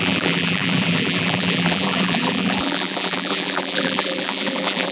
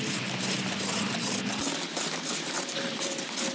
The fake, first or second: first